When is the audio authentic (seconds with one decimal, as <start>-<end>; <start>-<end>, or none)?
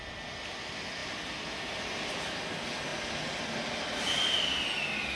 0.0-5.2